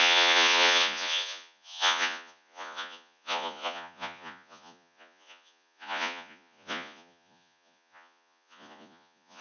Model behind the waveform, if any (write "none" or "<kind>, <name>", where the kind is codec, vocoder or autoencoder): vocoder, Vocos